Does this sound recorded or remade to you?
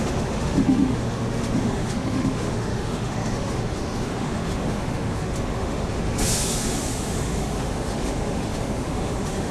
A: remade